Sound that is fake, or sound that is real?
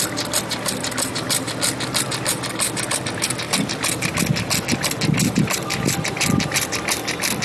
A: fake